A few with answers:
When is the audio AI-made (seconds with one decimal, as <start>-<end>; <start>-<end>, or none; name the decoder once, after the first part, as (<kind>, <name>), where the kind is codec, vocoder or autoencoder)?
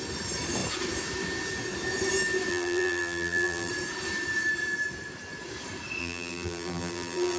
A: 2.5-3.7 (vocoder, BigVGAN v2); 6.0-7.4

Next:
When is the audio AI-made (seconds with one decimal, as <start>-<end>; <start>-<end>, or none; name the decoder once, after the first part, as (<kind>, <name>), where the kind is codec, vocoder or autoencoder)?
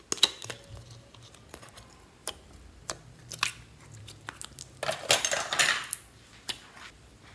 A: none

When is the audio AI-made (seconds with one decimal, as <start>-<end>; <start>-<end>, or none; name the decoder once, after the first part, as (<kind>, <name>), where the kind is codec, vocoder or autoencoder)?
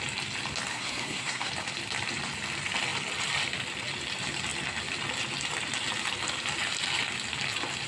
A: 0.7-1.5 (codec, SNAC)